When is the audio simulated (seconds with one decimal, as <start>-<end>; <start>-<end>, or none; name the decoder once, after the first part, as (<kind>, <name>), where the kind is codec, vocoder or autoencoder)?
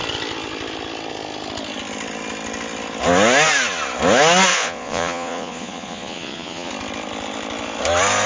4.5-6.7 (vocoder, Vocos)